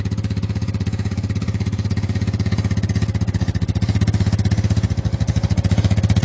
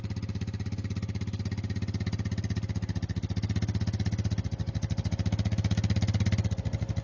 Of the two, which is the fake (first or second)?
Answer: first